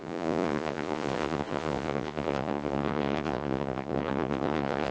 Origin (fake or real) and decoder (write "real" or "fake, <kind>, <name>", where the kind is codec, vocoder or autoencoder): fake, vocoder, Vocos